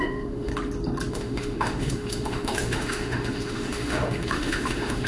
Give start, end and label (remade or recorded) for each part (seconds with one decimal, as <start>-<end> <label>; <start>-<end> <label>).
0.0-0.5 remade; 0.5-1.1 recorded; 1.1-5.1 remade

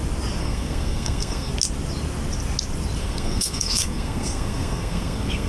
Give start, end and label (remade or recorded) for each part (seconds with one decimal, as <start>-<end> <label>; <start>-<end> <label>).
0.0-0.4 recorded; 0.4-1.5 remade; 1.5-3.0 recorded; 3.0-5.5 remade

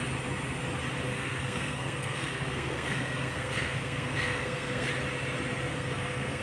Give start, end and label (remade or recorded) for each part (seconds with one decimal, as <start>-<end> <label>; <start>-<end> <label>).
0.0-1.1 recorded; 1.1-4.9 remade; 4.9-5.7 recorded; 5.7-6.4 remade